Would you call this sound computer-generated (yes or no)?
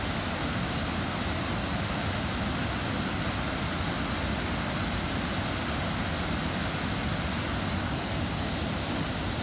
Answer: no